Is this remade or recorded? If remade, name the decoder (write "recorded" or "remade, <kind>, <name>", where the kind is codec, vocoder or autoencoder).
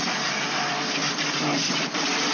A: recorded